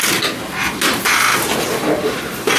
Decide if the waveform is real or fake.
real